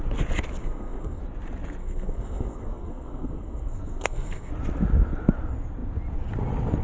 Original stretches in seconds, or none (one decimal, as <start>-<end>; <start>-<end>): 0.0-0.6; 1.2-1.8; 4.5-6.8